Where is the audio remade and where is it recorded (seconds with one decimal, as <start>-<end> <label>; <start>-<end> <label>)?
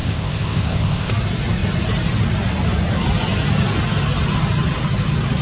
0.0-1.1 remade; 1.1-5.4 recorded